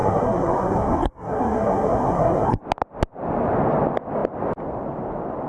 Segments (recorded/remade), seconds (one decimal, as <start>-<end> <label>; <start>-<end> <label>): 0.0-2.6 remade; 2.6-5.5 recorded